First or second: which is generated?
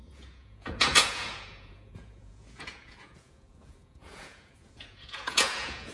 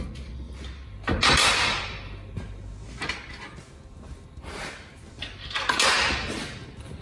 first